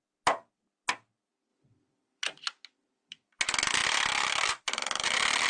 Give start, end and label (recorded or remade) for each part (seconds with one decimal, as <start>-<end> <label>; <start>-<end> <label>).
0.0-1.5 recorded; 1.5-3.4 remade; 3.4-3.8 recorded; 3.8-5.5 remade